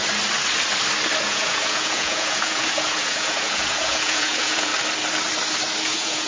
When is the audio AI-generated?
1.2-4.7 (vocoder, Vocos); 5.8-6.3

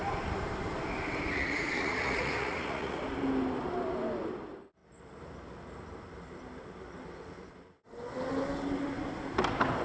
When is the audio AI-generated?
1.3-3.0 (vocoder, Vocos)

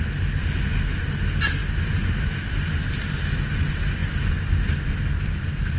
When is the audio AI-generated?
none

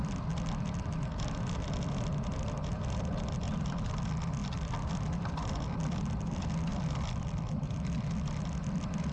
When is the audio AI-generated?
none